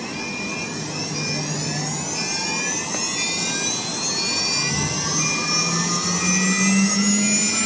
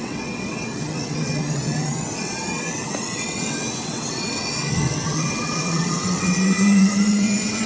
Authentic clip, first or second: first